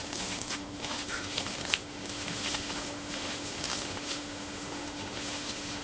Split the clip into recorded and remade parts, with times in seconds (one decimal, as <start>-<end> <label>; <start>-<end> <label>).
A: 0.0-5.8 remade